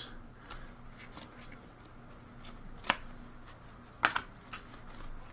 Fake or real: real